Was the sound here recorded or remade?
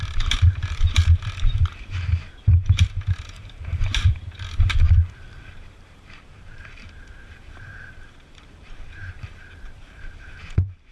remade